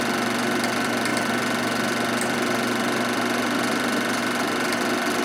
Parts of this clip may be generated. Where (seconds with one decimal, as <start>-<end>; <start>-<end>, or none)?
none